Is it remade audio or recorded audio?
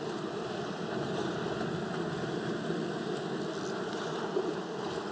remade